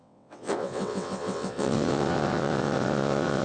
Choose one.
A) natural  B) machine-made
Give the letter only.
B